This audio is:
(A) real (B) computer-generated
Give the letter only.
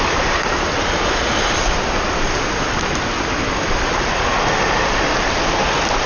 A